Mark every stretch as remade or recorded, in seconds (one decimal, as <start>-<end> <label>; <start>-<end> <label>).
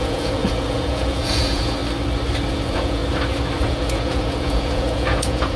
0.0-1.8 remade; 1.8-2.5 recorded; 2.5-3.0 remade; 3.0-3.6 recorded; 3.6-5.6 remade